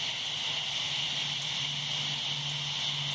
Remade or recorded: recorded